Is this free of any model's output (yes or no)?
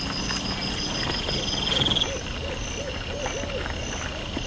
yes